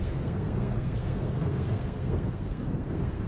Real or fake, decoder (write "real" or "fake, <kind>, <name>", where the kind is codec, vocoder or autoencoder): fake, codec, SNAC